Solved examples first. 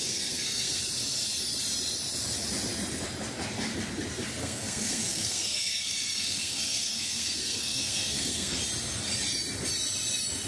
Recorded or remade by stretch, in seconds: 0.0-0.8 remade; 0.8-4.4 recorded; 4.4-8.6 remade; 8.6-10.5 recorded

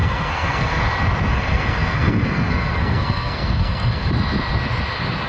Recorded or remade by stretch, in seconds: 0.0-0.8 remade; 0.8-1.3 recorded; 1.3-4.1 remade; 4.1-5.3 recorded

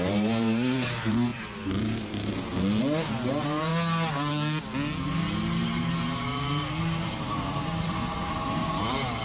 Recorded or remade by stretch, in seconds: 0.0-1.3 remade; 1.3-1.8 recorded; 1.8-2.5 remade; 2.5-3.3 recorded; 3.3-3.7 remade; 3.7-6.8 recorded; 6.8-9.2 remade

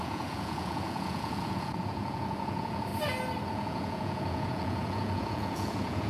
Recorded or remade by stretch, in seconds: 0.0-2.9 remade; 2.9-3.5 recorded; 3.5-6.1 remade

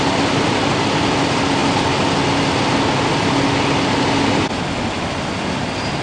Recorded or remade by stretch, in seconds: 0.0-6.0 recorded

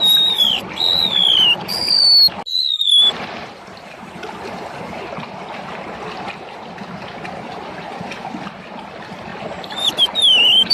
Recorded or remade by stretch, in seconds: 0.0-10.7 recorded